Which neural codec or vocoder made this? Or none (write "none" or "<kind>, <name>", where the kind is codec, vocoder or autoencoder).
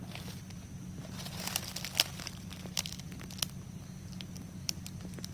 none